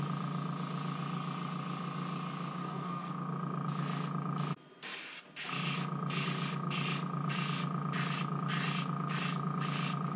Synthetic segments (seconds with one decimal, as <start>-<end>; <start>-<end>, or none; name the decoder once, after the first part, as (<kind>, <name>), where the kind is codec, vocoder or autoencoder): 2.6-3.1 (codec, SNAC)